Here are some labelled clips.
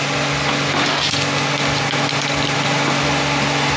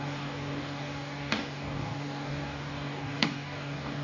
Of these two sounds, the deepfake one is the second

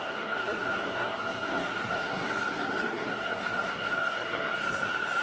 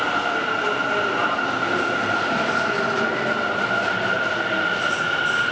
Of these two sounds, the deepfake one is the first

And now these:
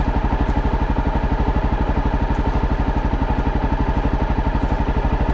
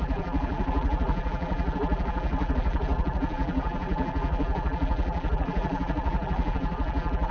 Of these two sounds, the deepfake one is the second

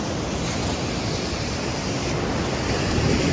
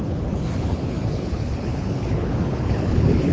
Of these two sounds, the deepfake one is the second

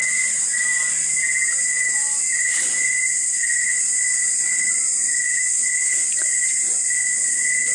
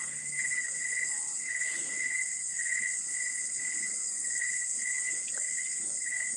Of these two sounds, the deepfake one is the second